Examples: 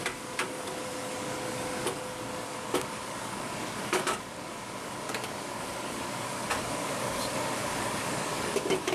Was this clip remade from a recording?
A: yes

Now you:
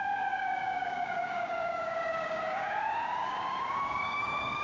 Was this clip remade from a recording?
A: yes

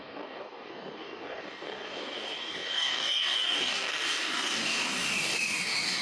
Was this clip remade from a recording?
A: yes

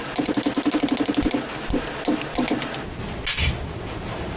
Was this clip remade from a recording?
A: no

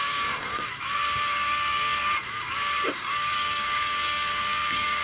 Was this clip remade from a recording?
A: yes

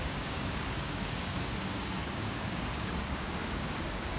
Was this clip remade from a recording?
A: yes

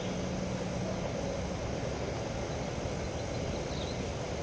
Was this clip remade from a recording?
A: no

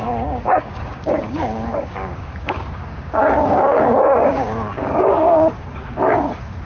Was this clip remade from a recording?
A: yes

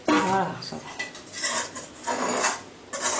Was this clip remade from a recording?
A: no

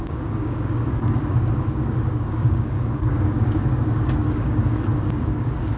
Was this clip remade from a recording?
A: yes